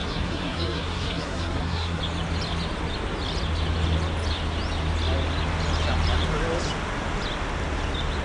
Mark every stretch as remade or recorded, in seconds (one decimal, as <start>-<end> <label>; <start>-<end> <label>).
0.0-2.0 remade; 2.0-8.2 recorded

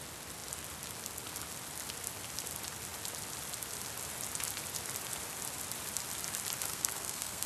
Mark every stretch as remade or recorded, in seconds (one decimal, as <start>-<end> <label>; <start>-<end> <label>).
0.0-6.7 recorded; 6.7-7.5 remade

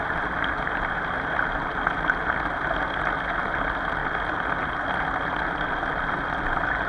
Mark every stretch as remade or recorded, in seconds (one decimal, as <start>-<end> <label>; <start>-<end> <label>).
0.0-6.9 recorded